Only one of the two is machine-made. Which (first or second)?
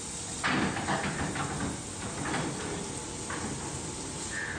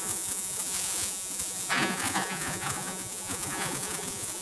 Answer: second